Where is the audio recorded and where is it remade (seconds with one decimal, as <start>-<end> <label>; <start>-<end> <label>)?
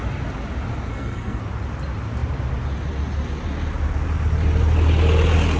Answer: 0.0-0.9 recorded; 0.9-1.4 remade; 1.4-5.6 recorded